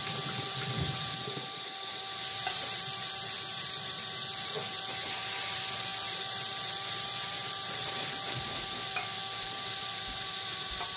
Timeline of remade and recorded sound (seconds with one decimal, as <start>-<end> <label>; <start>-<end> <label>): 0.0-11.0 remade